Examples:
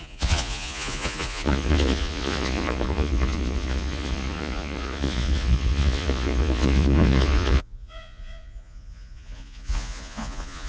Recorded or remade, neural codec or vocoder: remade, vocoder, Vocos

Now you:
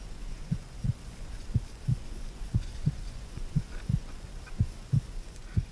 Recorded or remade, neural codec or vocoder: remade, vocoder, Vocos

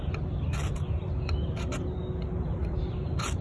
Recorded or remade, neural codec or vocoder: recorded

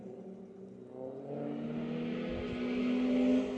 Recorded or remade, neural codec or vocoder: recorded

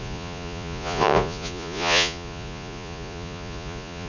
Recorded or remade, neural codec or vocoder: remade, vocoder, Vocos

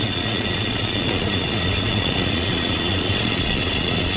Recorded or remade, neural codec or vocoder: remade, vocoder, Vocos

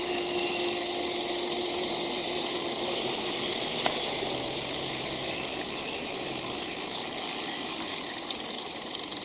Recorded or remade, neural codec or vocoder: recorded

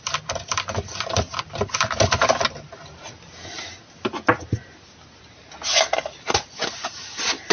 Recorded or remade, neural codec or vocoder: recorded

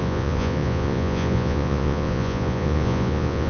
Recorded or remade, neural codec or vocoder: remade, vocoder, Vocos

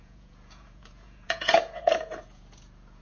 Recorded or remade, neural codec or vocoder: remade, vocoder, Vocos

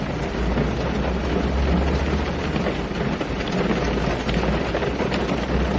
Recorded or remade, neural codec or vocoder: recorded